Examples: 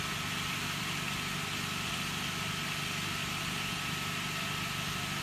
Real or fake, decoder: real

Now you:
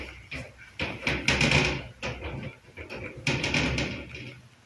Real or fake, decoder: real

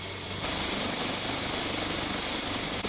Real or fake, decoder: real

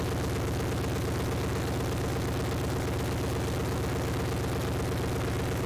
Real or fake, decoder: real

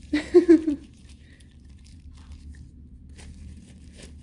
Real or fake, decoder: fake, vocoder, BigVGAN v2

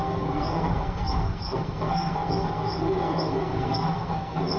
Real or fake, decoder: fake, codec, SNAC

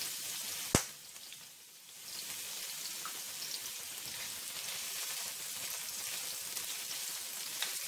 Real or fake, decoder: real